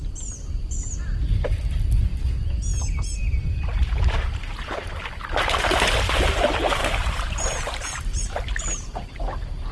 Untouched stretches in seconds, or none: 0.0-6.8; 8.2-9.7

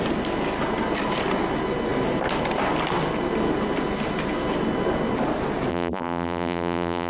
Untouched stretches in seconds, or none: 0.0-5.7

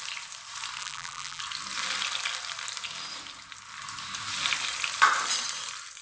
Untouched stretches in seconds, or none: 0.0-0.8; 1.4-6.0

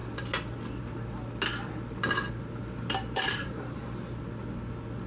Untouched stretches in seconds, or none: 0.0-3.0; 4.2-5.1

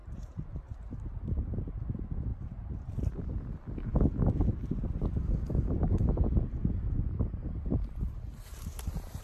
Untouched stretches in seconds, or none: 1.6-2.3; 3.3-7.4